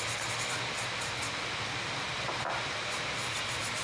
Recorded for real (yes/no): yes